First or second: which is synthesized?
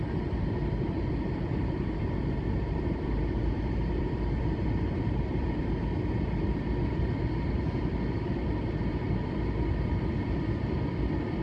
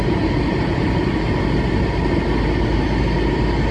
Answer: first